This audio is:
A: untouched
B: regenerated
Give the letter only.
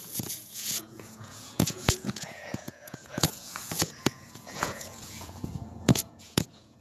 B